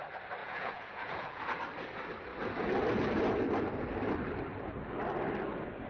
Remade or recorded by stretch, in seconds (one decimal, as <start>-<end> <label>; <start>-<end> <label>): 0.0-0.4 recorded; 0.4-1.4 remade; 1.4-5.9 recorded